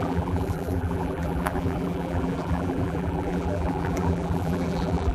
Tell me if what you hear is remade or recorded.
remade